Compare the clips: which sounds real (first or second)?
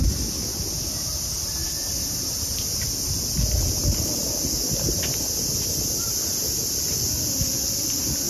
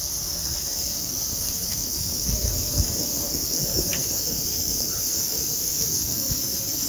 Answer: first